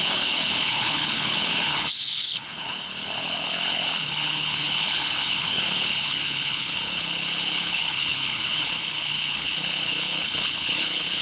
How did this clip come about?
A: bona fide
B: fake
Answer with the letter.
B